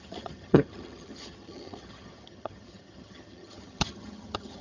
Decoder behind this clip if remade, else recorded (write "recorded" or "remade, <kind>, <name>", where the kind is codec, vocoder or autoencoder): remade, vocoder, HiFi-GAN